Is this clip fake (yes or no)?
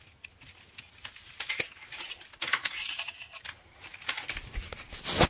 no